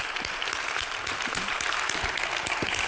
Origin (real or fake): fake